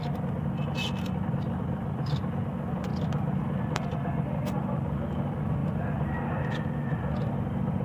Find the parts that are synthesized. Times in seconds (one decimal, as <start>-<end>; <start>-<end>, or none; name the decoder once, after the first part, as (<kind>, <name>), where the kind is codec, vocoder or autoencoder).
none

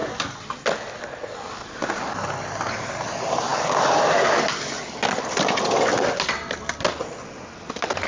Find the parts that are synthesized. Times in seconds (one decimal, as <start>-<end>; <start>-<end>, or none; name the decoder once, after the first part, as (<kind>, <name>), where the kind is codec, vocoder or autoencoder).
none

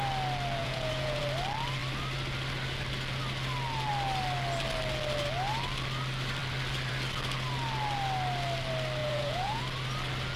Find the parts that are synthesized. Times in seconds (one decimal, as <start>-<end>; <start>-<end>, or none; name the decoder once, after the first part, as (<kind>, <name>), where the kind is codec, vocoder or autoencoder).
0.6-1.2 (vocoder, Vocos); 9.0-9.6

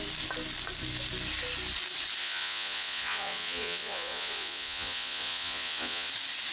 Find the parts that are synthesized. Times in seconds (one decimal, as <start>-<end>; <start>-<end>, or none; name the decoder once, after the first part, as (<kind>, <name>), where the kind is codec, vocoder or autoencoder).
2.2-6.1 (vocoder, Vocos)

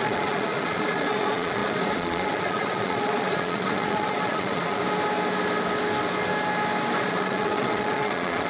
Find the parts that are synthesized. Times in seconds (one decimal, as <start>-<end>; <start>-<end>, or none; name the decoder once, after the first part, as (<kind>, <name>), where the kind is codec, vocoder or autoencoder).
0.0-4.8 (vocoder, Vocos); 7.0-8.5

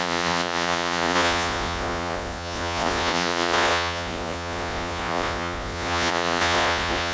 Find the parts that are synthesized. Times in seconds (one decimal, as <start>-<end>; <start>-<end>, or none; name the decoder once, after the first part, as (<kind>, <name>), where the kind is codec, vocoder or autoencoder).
0.0-7.1 (vocoder, Vocos)